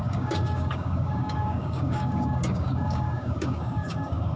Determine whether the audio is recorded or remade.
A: remade